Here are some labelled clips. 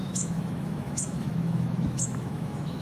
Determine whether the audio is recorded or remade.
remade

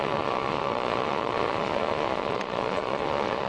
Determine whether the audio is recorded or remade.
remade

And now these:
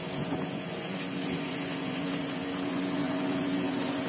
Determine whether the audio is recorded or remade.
remade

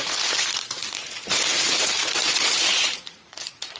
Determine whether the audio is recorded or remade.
remade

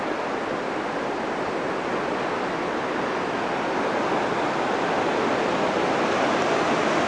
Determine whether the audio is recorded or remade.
recorded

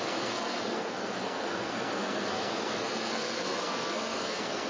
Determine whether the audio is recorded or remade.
remade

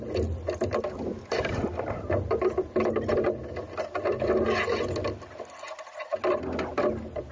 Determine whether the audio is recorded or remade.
recorded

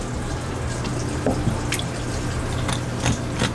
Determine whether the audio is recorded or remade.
recorded